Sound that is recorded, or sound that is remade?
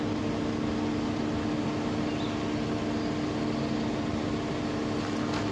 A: recorded